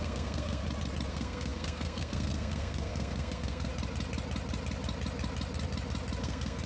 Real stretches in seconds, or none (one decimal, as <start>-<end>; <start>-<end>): 0.6-1.1; 3.7-6.2